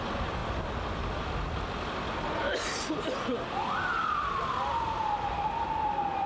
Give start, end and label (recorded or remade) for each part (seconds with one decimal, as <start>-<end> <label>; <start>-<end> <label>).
0.0-6.3 recorded